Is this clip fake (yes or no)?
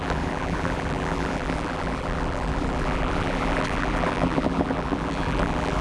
yes